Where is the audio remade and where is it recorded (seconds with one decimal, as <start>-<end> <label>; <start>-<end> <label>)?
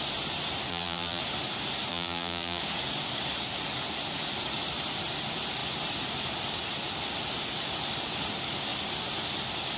0.0-0.7 recorded; 0.7-1.2 remade; 1.2-1.9 recorded; 1.9-2.6 remade; 2.6-9.8 recorded